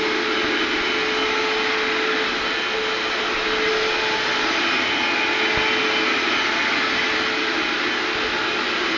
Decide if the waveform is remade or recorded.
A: recorded